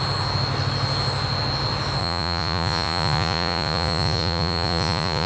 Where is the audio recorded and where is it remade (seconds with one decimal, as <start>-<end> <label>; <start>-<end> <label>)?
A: 0.0-2.0 recorded; 2.0-5.3 remade